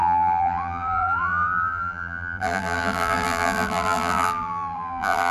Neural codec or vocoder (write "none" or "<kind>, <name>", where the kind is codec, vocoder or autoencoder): vocoder, BigVGAN v2